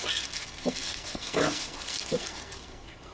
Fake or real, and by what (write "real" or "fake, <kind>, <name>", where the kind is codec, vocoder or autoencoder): fake, codec, SNAC